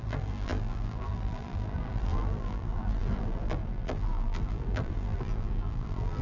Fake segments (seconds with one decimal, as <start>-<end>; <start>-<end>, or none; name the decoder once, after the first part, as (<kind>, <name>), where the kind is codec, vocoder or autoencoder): 0.0-6.2 (vocoder, BigVGAN v2)